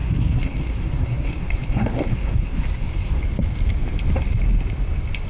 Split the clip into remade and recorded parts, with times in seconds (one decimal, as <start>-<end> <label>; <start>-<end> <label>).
0.0-3.2 remade; 3.2-5.3 recorded